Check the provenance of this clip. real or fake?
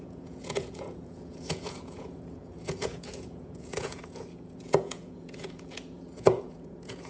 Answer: fake